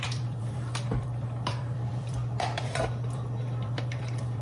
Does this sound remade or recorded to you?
remade